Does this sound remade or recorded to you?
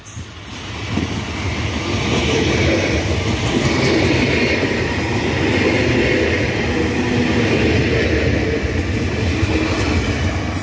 recorded